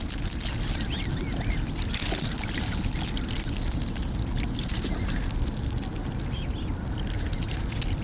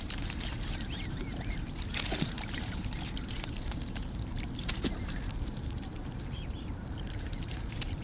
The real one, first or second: first